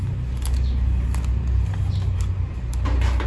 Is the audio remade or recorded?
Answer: recorded